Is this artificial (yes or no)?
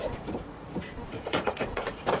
yes